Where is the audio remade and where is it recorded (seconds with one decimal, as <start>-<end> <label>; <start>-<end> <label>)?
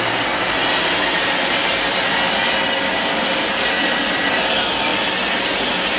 0.0-6.0 recorded